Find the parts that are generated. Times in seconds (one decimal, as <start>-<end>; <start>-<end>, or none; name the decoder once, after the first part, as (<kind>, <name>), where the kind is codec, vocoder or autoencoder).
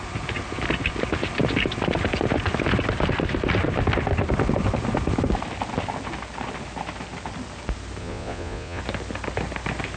8.0-8.8 (vocoder, Vocos)